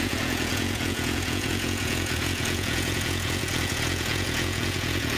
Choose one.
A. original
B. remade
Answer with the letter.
B